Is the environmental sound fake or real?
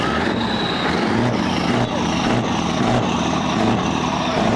fake